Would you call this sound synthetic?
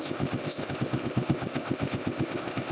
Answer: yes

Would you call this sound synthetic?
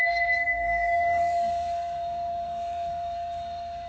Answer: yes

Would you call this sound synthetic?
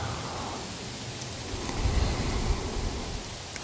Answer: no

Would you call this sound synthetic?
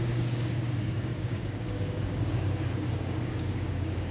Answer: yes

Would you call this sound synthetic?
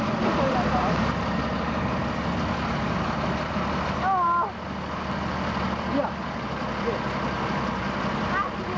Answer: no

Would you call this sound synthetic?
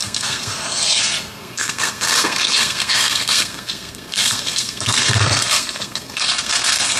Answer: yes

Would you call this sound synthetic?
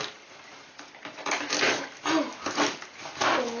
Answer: no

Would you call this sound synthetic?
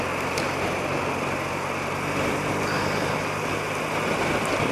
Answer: no